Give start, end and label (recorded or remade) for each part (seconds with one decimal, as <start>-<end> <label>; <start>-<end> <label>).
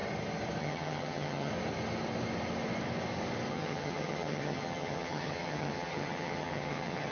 0.0-0.6 recorded; 0.6-1.5 remade; 1.5-3.5 recorded; 3.5-7.1 remade